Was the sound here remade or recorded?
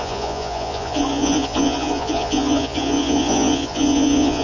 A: remade